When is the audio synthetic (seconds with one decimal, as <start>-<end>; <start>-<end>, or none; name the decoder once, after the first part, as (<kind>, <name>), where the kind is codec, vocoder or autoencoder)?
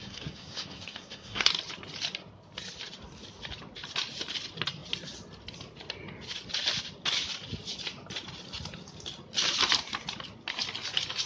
0.0-1.5 (codec, SNAC)